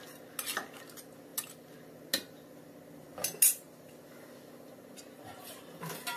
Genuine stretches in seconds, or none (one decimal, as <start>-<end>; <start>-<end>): 0.0-6.2